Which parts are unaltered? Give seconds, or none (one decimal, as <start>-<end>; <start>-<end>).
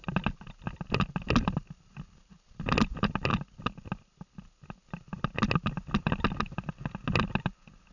0.0-7.9